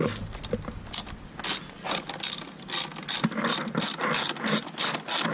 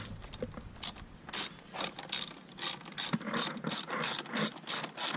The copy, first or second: second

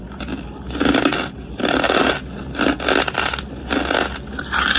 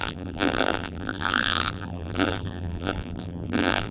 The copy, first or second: second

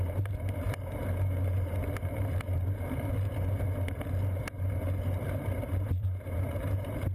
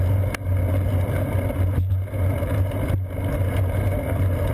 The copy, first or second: first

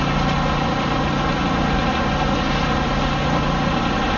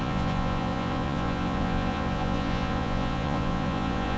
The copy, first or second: second